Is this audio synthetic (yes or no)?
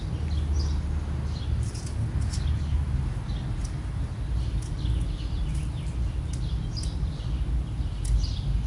no